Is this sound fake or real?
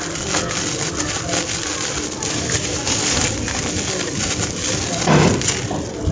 real